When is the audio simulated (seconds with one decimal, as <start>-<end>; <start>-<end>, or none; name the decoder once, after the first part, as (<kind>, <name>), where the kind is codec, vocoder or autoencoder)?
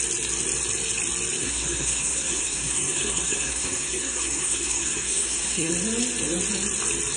1.4-5.7 (codec, SNAC)